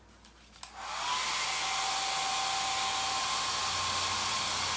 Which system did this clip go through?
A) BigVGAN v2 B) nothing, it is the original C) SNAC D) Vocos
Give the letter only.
B